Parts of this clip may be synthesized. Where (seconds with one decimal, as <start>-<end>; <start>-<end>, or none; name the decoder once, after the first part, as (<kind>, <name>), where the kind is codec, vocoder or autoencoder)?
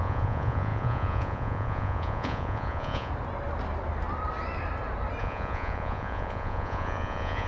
0.0-3.1 (vocoder, Vocos); 5.2-7.5